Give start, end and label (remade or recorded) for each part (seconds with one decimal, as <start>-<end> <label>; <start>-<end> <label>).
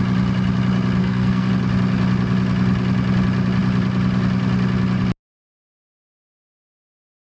0.0-1.0 recorded; 1.0-1.5 remade; 1.5-7.2 recorded